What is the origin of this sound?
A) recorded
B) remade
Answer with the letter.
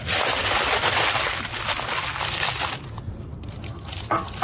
A